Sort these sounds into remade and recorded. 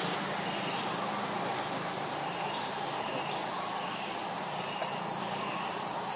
remade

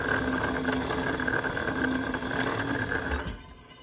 recorded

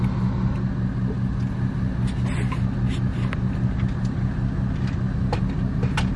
recorded